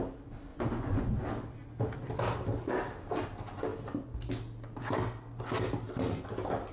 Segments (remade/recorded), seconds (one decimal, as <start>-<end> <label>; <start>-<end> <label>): 0.0-0.5 recorded; 0.5-1.1 remade; 1.1-6.7 recorded